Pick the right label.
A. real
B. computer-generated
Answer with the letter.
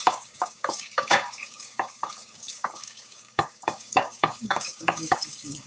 B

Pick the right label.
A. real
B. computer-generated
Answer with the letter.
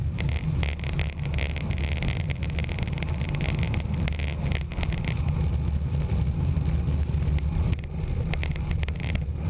A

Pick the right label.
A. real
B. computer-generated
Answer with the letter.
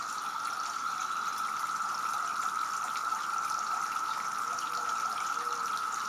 A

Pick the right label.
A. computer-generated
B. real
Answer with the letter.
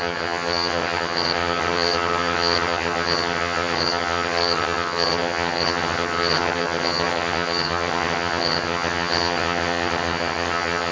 A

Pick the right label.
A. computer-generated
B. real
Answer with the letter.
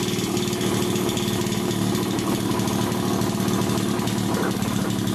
B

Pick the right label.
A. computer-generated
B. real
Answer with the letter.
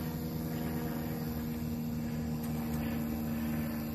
B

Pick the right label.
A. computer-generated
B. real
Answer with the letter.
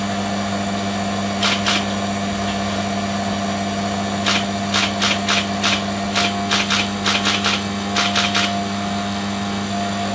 B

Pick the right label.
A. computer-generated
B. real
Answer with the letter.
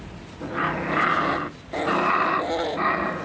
B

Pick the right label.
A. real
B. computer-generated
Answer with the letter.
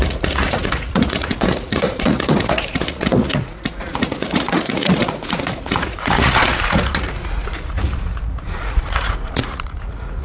B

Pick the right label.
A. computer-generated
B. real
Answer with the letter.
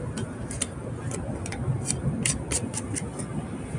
B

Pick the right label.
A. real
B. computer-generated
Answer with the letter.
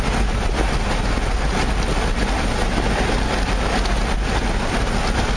A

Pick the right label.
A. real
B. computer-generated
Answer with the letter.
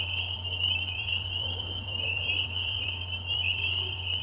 B